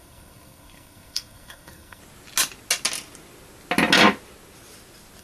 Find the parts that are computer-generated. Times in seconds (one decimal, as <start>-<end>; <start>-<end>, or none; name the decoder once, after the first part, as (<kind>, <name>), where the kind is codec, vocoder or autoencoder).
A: 0.0-2.0 (codec, SNAC)